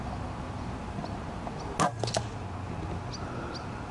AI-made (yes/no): no